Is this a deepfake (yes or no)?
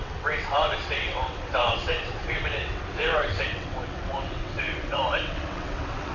yes